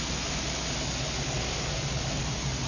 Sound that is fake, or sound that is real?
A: real